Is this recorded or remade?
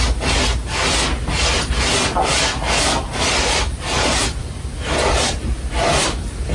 recorded